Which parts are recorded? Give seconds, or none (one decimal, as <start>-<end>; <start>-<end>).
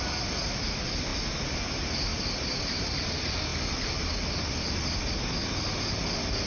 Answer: 0.0-6.5